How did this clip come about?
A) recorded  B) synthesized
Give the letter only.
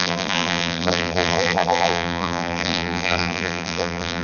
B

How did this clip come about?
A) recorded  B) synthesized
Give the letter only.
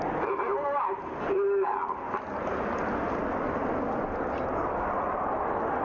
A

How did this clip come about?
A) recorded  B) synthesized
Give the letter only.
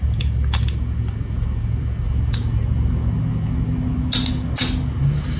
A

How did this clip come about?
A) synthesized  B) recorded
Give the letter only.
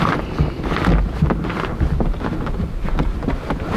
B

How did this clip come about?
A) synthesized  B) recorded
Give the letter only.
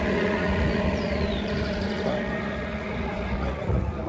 A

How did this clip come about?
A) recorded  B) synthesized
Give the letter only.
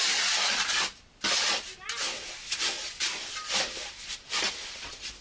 A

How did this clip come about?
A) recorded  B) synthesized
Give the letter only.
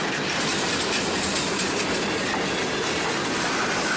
A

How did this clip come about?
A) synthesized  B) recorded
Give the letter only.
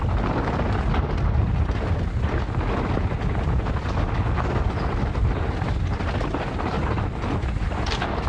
B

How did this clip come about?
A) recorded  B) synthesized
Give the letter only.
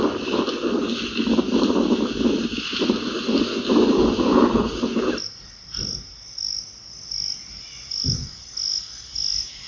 A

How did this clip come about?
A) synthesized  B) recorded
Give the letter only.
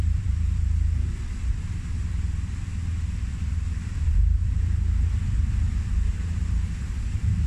A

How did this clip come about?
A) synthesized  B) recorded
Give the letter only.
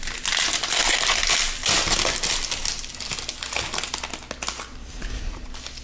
B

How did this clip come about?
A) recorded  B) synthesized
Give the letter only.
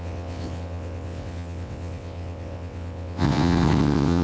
B